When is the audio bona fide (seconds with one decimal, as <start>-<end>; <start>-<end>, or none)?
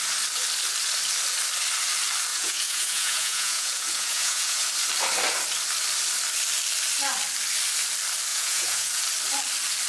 0.0-2.3; 4.7-8.3; 9.0-9.9